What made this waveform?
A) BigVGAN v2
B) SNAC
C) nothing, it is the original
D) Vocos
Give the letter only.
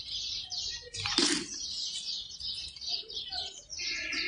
C